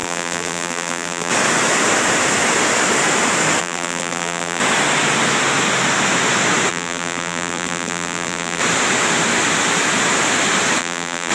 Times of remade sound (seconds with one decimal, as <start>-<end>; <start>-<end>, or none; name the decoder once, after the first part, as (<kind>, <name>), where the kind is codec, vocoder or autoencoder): 0.0-1.3 (vocoder, BigVGAN v2); 3.6-4.6; 6.7-8.6; 10.8-11.3